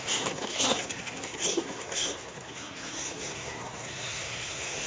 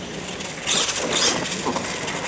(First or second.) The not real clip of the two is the first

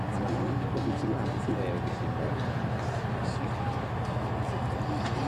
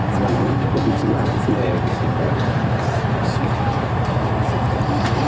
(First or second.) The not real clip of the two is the second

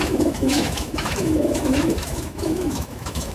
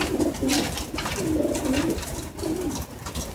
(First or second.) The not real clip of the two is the first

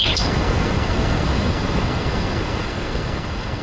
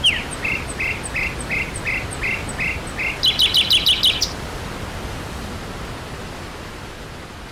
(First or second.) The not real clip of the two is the first